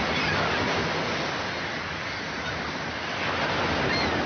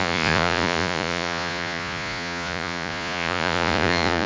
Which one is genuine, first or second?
first